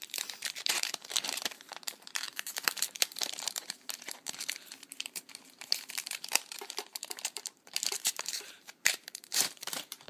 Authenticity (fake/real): fake